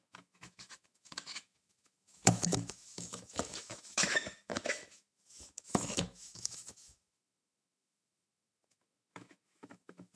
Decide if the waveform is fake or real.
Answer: fake